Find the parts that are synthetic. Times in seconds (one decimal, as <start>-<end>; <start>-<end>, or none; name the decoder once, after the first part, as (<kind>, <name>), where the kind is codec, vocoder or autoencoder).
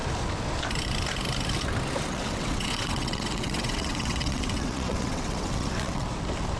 2.1-6.1 (vocoder, WaveNeXt)